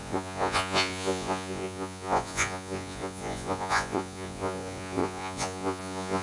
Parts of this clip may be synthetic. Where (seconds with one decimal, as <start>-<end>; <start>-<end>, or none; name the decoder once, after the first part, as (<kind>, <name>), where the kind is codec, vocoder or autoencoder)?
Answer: 0.0-6.2 (vocoder, Vocos)